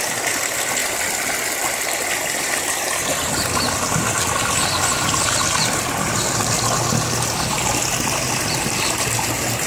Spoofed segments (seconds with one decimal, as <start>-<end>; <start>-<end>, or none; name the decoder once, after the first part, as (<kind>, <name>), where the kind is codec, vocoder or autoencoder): none